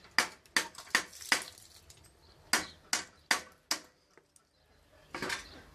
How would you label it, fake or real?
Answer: real